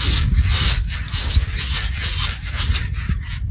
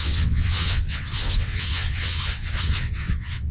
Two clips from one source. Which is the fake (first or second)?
second